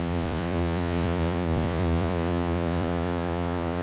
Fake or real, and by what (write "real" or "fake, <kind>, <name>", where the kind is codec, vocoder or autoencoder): fake, vocoder, Vocos